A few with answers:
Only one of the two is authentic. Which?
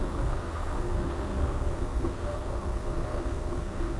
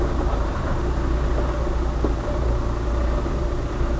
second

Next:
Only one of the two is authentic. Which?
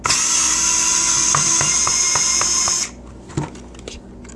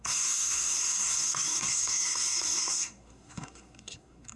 first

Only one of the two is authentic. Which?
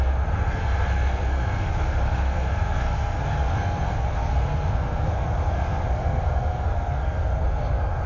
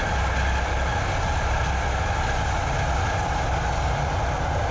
second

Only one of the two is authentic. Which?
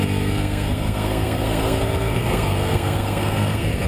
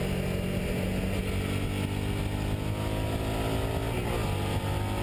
second